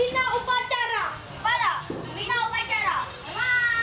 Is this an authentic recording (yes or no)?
yes